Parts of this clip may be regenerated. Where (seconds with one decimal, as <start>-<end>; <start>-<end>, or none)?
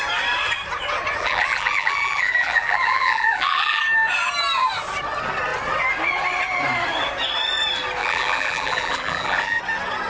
1.2-3.8; 8.0-9.6